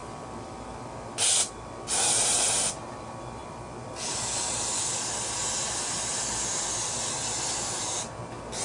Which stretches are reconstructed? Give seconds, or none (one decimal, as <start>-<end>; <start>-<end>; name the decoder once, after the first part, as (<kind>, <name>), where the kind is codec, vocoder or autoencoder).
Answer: none